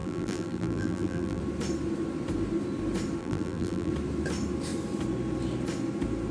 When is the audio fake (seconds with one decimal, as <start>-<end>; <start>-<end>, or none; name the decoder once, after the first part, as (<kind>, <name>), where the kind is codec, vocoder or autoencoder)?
0.0-1.4 (vocoder, BigVGAN v2); 3.2-3.9